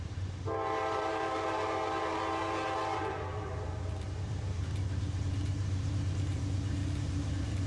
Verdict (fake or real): fake